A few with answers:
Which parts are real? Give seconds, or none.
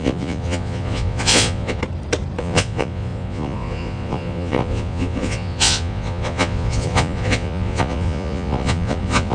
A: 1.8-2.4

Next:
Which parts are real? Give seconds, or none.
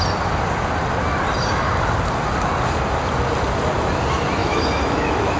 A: 0.0-4.4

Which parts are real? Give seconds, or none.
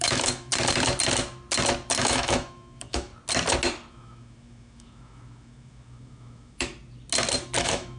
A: 0.5-2.0; 3.1-3.9; 6.7-7.6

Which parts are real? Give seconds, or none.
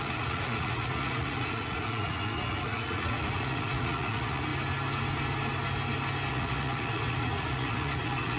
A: 4.5-6.3